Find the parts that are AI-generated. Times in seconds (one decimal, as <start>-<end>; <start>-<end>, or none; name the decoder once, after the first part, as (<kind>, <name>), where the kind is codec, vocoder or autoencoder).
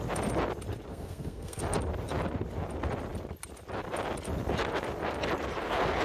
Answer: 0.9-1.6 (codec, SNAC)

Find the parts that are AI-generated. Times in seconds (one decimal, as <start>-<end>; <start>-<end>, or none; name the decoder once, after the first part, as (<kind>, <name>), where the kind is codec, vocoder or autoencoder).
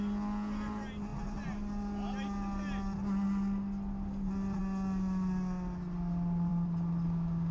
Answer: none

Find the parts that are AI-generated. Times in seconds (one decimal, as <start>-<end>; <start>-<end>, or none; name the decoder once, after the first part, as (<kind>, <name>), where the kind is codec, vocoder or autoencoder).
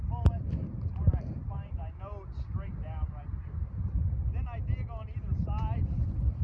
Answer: none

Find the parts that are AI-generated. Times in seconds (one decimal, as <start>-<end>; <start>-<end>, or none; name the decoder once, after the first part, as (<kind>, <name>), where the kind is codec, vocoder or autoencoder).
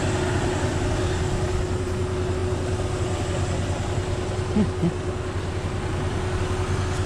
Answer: none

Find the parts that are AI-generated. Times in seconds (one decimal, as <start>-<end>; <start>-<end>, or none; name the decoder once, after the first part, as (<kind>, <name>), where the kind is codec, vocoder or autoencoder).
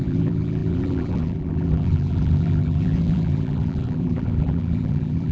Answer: 0.0-5.3 (vocoder, BigVGAN v2)